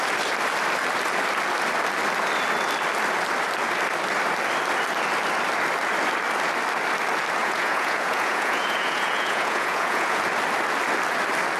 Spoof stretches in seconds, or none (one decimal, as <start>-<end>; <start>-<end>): 7.4-10.2